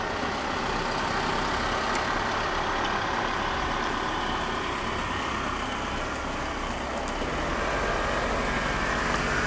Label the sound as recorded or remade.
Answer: recorded